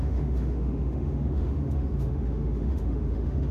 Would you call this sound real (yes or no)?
no